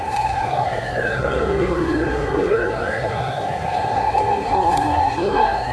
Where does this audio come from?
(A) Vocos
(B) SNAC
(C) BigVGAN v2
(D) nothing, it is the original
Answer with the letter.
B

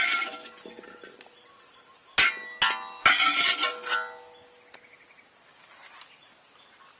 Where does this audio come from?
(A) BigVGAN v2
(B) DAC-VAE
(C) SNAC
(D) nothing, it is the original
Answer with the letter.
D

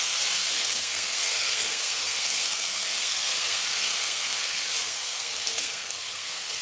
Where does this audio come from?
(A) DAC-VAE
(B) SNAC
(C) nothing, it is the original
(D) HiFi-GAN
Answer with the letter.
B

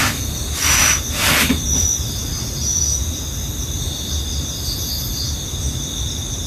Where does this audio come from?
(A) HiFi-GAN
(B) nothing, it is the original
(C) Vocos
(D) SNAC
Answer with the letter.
B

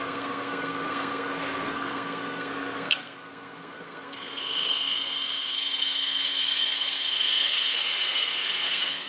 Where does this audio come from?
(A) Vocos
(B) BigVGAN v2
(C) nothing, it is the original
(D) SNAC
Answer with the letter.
D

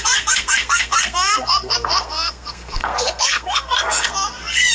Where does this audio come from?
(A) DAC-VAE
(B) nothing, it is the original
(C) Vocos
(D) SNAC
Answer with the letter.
D